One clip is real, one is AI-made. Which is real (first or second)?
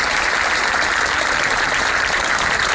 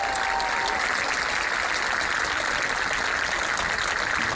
second